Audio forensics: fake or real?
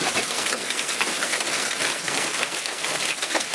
fake